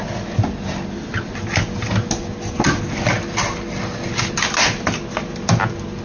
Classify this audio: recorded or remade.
recorded